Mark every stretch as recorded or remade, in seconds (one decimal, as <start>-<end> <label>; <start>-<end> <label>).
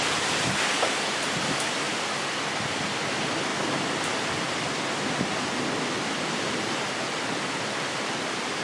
0.0-8.6 recorded